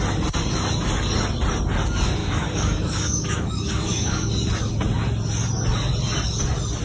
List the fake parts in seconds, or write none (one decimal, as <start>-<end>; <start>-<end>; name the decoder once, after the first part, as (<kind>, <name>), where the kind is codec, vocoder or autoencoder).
2.2-4.3 (codec, DAC)